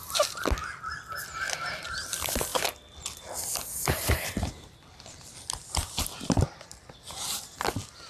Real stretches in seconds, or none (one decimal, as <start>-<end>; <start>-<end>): 0.6-1.5